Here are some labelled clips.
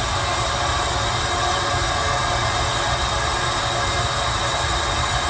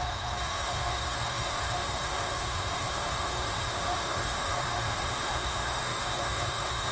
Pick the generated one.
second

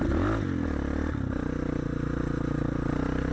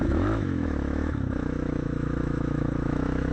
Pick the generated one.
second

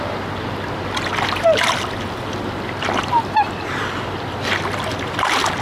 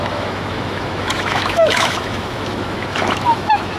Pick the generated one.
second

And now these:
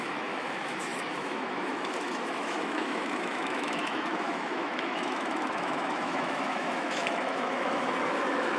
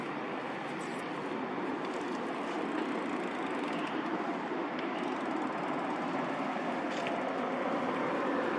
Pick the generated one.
first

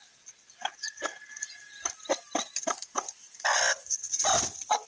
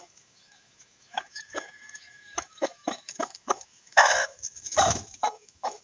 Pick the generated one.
second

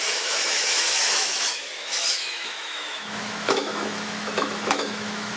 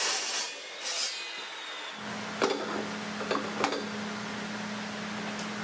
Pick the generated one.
first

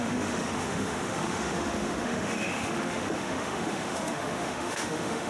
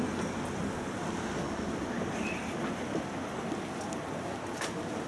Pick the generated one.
first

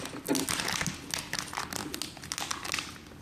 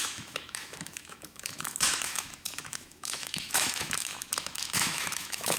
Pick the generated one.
second